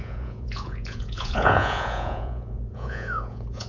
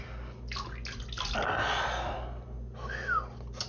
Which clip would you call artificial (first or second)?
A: first